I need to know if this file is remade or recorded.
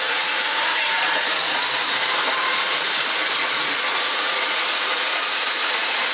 remade